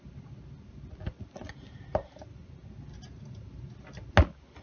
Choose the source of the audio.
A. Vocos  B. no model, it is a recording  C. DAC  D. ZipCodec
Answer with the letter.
B